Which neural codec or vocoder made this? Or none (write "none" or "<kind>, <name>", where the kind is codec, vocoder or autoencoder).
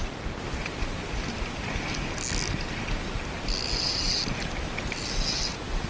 none